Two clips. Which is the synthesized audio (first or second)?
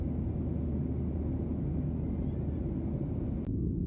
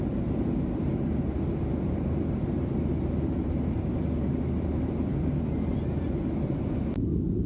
second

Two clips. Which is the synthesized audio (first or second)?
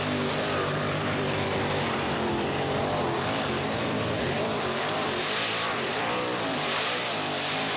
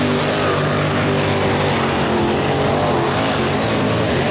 first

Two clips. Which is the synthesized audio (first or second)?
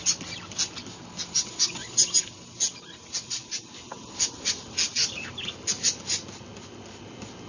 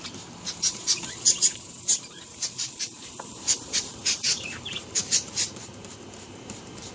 second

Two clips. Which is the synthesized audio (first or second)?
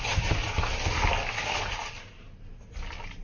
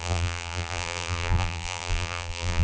second